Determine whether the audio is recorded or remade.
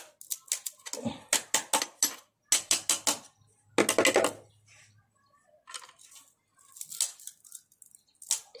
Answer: recorded